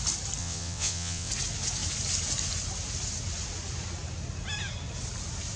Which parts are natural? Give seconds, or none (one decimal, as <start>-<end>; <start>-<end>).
0.0-0.4; 1.3-5.6